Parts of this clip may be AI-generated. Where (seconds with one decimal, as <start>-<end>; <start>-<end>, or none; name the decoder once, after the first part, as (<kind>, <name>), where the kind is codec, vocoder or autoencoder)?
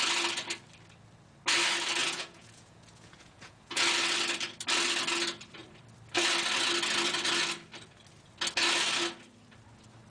2.0-3.8 (vocoder, Vocos)